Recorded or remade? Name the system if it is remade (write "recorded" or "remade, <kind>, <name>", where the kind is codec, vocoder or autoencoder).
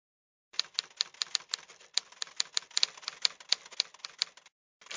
recorded